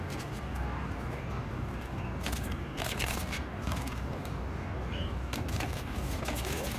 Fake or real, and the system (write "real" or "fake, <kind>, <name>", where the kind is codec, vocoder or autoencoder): fake, codec, DAC